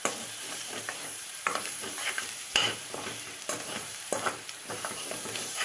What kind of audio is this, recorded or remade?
remade